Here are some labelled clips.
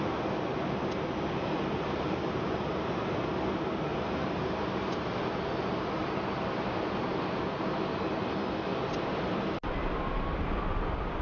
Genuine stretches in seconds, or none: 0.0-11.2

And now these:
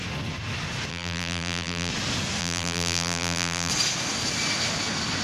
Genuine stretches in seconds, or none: 0.0-0.9; 1.9-2.4; 3.7-5.2

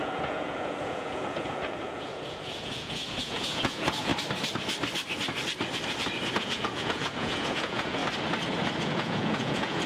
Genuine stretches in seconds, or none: 4.1-6.3; 8.0-8.8

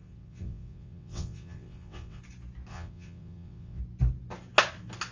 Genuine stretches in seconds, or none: 2.2-2.7; 3.8-5.1